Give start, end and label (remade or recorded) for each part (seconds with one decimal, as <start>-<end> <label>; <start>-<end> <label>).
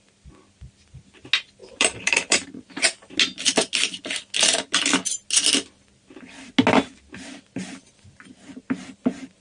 0.0-1.6 recorded; 1.6-2.5 remade; 2.5-9.4 recorded